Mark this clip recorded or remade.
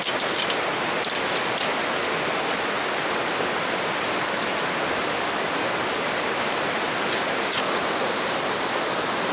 recorded